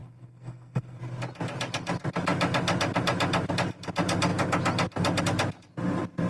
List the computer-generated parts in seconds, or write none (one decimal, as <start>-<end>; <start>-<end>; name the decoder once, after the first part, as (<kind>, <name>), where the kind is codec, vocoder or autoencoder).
0.0-1.0 (codec, SNAC)